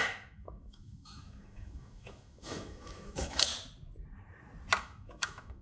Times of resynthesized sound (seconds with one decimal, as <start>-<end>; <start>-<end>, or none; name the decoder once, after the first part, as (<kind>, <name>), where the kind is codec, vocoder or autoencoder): 0.0-3.5 (autoencoder, DAC-VAE); 4.8-5.6